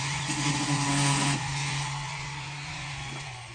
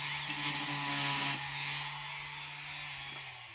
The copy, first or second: first